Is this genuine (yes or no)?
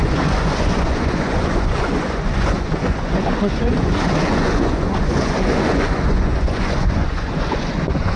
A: no